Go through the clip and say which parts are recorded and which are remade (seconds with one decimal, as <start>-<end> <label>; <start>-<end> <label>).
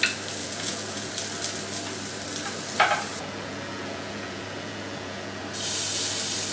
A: 0.0-0.4 recorded; 0.4-1.1 remade; 1.1-3.1 recorded; 3.1-5.4 remade; 5.4-6.5 recorded